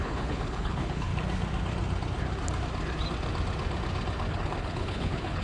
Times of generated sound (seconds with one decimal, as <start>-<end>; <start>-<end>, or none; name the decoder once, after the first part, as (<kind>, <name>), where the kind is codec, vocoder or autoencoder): 0.0-1.1 (codec, HILCodec); 4.3-5.4